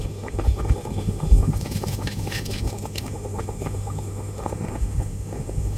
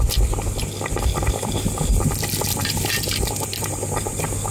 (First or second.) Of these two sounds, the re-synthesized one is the first